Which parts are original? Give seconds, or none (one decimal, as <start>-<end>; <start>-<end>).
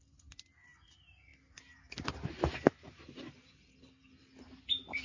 0.0-5.0